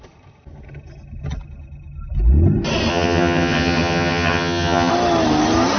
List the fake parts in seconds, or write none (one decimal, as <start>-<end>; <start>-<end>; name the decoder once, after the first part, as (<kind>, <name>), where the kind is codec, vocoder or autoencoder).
2.9-4.9 (vocoder, HiFi-GAN)